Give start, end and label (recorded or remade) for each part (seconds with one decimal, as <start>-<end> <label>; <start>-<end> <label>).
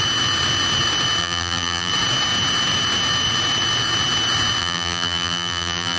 0.0-1.2 recorded; 1.2-1.9 remade; 1.9-4.6 recorded; 4.6-6.0 remade